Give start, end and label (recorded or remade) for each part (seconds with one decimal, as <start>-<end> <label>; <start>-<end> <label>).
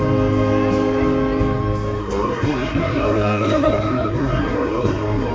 0.0-2.0 recorded; 2.0-5.3 remade